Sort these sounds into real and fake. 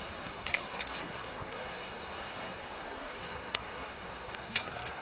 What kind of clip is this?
fake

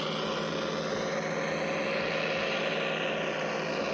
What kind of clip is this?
real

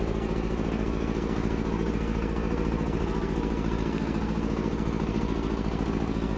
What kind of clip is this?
fake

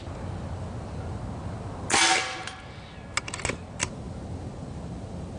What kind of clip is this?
real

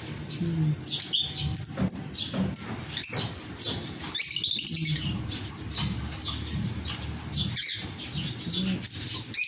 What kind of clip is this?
real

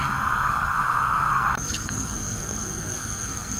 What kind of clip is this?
fake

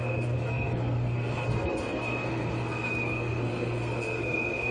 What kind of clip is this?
fake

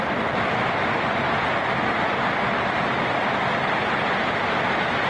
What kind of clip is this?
real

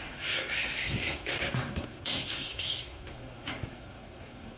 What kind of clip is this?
fake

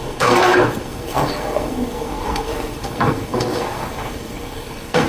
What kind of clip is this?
fake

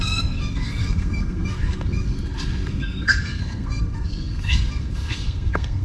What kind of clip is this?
fake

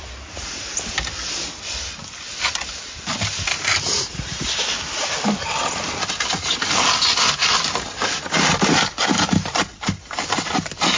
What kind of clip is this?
real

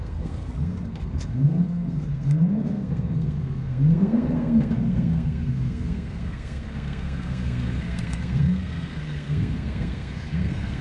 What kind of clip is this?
fake